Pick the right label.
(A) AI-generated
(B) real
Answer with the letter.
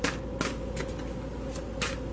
B